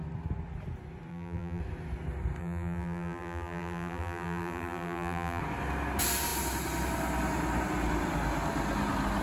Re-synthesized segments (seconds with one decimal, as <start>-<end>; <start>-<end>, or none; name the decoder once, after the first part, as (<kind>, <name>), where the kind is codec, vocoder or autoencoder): 1.1-1.6 (vocoder, BigVGAN v2); 2.4-5.4